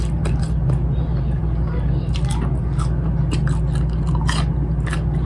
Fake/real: real